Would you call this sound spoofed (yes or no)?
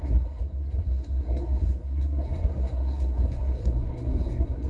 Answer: yes